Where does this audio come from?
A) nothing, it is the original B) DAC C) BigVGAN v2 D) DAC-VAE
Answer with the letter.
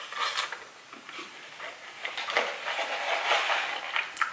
A